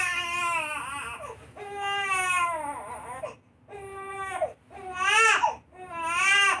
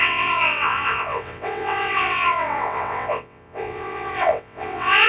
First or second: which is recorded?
first